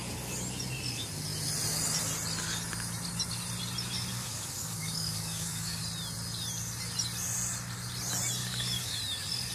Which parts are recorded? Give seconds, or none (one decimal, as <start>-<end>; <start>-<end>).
0.0-4.1; 5.8-8.4; 9.0-9.5